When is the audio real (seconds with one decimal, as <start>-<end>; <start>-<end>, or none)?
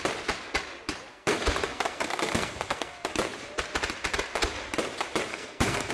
0.0-1.1; 3.1-5.3